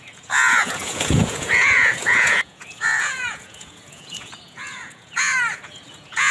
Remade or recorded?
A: remade